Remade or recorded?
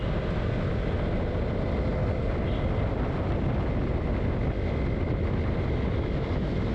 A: recorded